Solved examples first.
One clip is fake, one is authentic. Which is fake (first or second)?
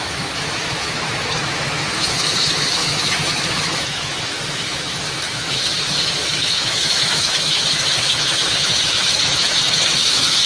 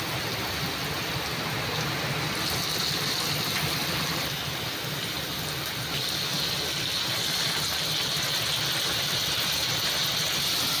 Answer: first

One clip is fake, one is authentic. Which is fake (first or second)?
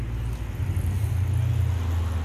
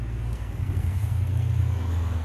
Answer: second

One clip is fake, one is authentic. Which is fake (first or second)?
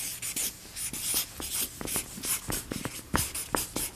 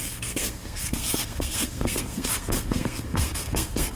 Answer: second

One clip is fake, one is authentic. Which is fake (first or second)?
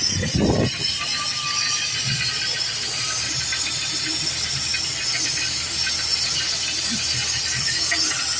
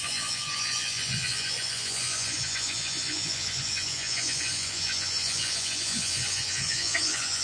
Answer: second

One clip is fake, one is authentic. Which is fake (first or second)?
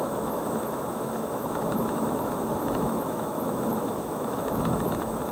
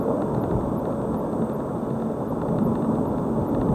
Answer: first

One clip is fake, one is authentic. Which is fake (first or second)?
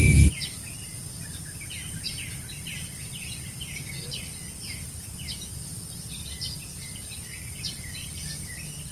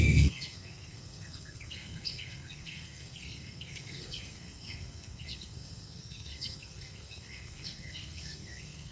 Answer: second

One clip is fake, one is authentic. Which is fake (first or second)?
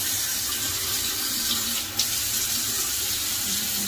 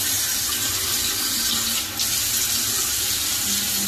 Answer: first